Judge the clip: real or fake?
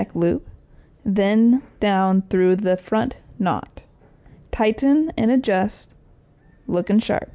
real